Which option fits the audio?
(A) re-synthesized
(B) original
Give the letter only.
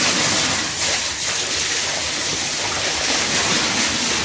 B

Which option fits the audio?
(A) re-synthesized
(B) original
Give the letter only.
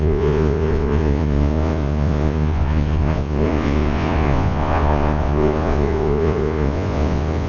A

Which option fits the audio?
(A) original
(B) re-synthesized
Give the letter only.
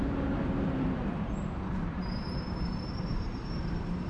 B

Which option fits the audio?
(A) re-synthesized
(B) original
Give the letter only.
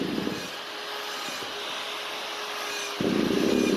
B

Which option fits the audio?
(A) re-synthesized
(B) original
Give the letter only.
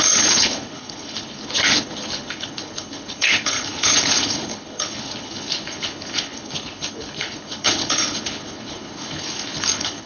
A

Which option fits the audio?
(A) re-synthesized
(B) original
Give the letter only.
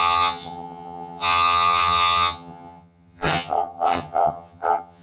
A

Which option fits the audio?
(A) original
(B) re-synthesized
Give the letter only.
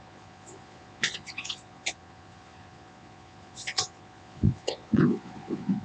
B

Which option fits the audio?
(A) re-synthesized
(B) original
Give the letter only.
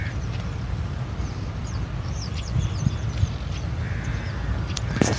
A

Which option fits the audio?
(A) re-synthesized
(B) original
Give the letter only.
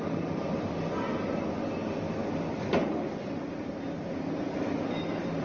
A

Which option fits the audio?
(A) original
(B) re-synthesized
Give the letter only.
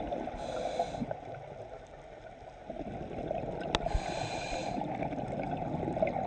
A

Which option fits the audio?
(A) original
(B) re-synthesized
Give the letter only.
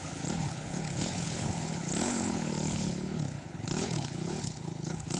B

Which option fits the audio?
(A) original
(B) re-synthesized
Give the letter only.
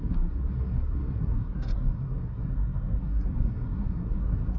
B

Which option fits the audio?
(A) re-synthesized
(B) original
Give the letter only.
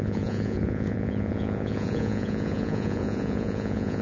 A